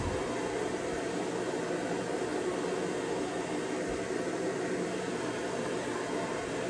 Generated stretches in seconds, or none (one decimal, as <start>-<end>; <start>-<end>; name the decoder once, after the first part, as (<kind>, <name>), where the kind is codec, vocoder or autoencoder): none